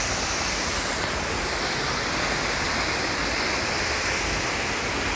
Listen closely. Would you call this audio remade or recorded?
recorded